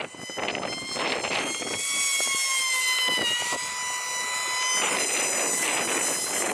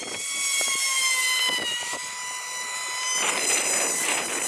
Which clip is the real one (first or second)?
first